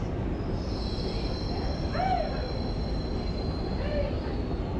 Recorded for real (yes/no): yes